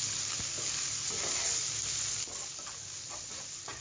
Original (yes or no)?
yes